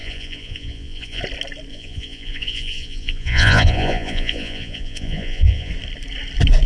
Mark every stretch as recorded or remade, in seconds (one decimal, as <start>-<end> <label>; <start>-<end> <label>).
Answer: 0.0-1.2 remade; 1.2-1.7 recorded; 1.7-5.7 remade; 5.7-6.7 recorded